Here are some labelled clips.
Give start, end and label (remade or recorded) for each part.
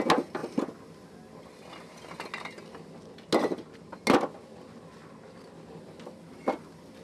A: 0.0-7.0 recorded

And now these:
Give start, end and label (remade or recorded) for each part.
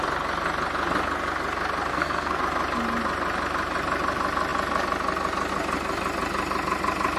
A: 0.0-1.9 recorded; 1.9-2.4 remade; 2.4-7.2 recorded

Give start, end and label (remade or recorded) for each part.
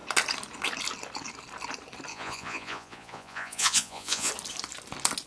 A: 0.0-2.1 recorded; 2.1-4.3 remade; 4.3-5.3 recorded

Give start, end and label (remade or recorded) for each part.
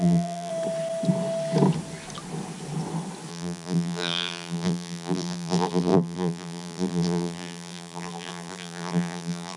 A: 0.0-0.5 remade; 0.5-3.3 recorded; 3.3-9.6 remade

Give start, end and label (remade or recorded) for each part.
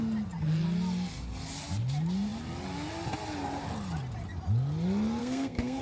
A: 0.0-5.2 recorded; 5.2-5.8 remade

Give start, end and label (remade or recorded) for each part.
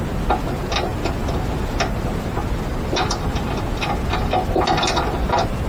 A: 0.0-5.7 recorded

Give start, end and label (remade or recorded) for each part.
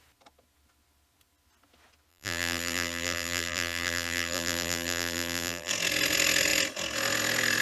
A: 0.0-2.1 recorded; 2.1-5.7 remade; 5.7-7.6 recorded